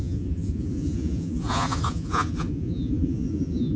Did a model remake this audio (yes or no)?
yes